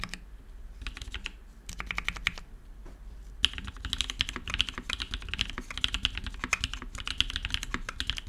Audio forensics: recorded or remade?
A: recorded